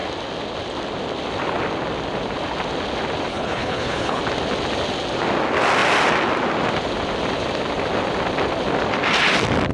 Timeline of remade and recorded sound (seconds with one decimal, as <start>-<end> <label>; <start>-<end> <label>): 0.0-3.3 recorded; 3.3-4.2 remade; 4.2-9.7 recorded